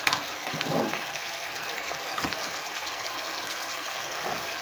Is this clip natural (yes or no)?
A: no